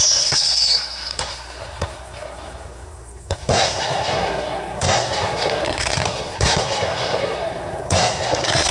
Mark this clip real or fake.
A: fake